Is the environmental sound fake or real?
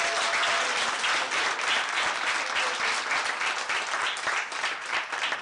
real